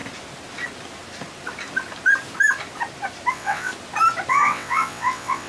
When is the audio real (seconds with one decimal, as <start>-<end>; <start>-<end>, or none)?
0.0-3.3; 3.7-4.3